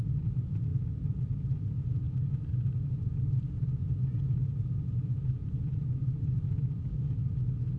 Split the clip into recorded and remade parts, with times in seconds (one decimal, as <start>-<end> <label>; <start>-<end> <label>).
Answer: 0.0-6.8 recorded; 6.8-7.3 remade; 7.3-7.8 recorded